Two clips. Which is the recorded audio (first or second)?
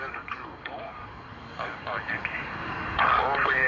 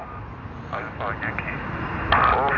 second